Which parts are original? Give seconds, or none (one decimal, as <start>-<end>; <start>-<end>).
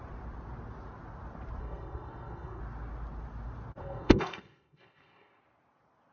0.0-1.6; 2.6-3.8; 5.4-6.1